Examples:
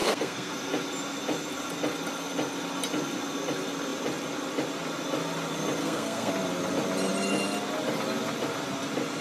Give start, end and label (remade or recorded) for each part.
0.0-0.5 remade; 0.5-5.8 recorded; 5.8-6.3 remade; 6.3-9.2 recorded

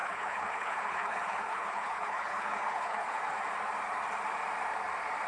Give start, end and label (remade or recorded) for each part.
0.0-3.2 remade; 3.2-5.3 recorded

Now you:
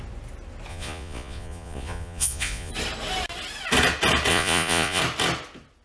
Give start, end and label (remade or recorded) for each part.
0.0-0.7 recorded; 0.7-2.7 remade; 2.7-4.3 recorded; 4.3-5.0 remade; 5.0-5.8 recorded

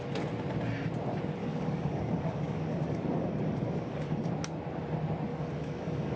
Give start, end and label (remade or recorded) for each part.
0.0-1.4 recorded; 1.4-4.3 remade; 4.3-5.3 recorded; 5.3-6.2 remade

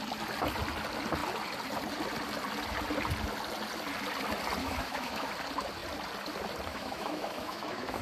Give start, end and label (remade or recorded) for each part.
0.0-4.6 recorded; 4.6-5.3 remade; 5.3-6.7 recorded; 6.7-8.0 remade

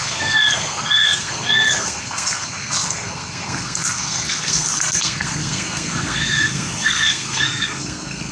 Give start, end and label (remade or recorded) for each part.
0.0-8.3 remade

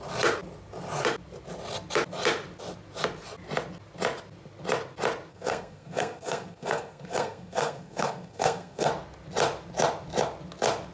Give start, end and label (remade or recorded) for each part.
0.0-5.3 recorded; 5.3-8.9 remade; 8.9-10.9 recorded

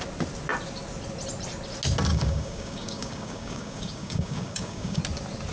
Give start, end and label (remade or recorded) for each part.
0.0-2.1 recorded; 2.1-5.0 remade; 5.0-5.5 recorded